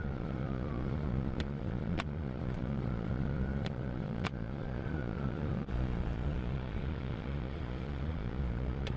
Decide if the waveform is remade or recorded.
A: remade